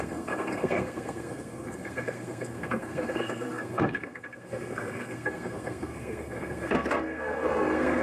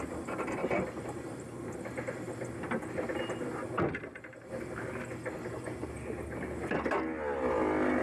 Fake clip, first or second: first